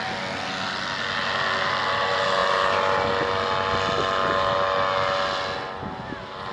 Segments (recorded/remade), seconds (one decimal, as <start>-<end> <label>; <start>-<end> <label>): 0.0-6.5 recorded